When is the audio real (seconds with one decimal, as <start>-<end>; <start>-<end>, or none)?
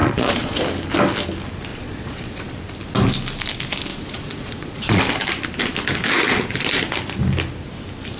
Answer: 0.6-1.7; 2.5-3.9; 5.0-8.2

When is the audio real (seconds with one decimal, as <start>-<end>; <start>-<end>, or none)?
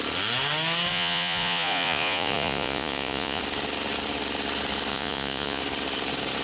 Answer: 0.0-0.9; 3.4-4.9; 5.6-6.4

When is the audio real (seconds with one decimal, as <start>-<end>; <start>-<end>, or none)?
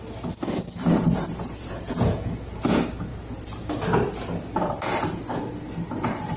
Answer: 0.0-0.8; 2.3-6.4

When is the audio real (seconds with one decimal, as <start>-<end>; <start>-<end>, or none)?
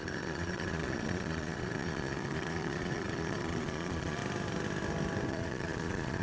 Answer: 4.2-5.3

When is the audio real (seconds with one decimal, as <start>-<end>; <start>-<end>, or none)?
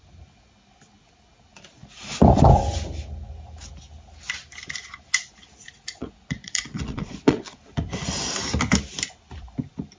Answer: 0.0-6.0; 7.6-10.0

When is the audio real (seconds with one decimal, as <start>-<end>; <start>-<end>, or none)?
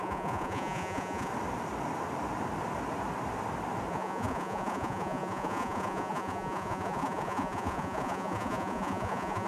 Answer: 1.3-3.9